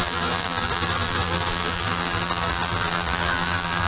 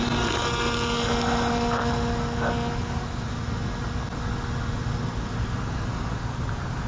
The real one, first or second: second